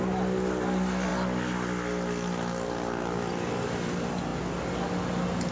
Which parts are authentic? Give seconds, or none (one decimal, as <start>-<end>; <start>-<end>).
0.0-5.5